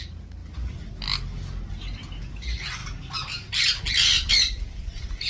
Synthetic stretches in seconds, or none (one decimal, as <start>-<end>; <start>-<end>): none